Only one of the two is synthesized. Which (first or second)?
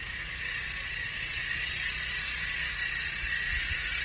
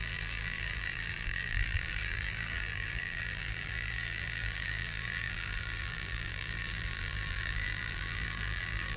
second